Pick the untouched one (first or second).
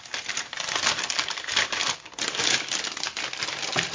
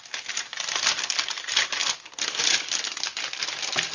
second